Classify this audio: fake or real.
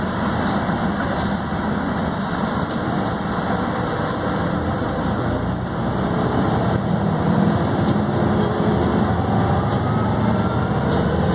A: fake